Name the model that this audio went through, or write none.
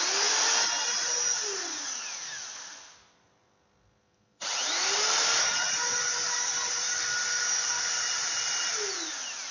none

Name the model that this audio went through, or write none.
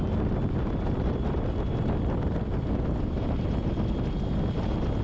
none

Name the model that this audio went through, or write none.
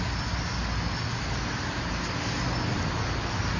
none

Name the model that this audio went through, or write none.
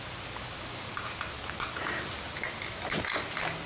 none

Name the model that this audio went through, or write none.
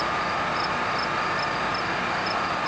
none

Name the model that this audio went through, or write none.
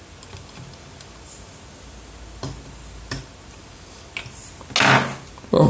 none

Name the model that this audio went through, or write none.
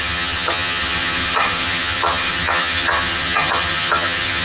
vocoder, HiFi-GAN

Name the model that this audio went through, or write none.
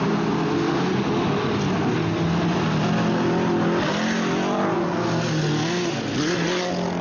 none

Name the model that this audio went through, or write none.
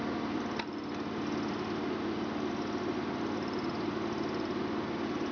none